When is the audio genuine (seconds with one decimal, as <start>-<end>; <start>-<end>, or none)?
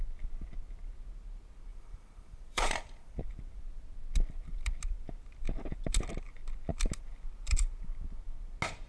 0.0-1.7; 3.2-8.9